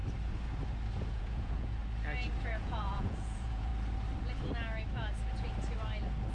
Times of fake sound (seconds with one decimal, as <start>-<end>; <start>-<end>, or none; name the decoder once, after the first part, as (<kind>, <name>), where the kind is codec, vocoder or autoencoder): 1.1-1.8 (vocoder, Vocos); 2.4-3.7